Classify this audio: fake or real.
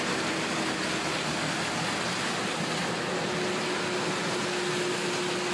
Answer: real